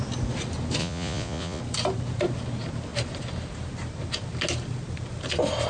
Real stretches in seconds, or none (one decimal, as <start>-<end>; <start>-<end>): 0.0-0.8; 1.6-5.7